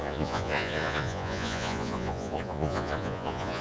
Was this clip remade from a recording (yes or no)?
yes